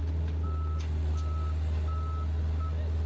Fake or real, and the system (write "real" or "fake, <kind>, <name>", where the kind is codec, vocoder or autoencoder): real